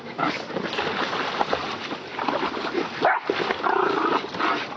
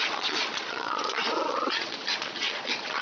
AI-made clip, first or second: second